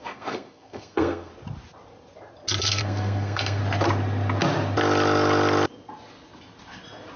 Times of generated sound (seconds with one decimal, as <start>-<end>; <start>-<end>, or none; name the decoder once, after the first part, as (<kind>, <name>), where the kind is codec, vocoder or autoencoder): 0.0-1.3 (codec, SNAC); 2.6-3.6